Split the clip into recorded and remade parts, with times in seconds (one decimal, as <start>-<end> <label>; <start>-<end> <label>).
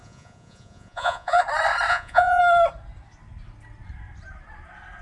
0.0-1.4 remade; 1.4-1.9 recorded; 1.9-2.4 remade; 2.4-5.0 recorded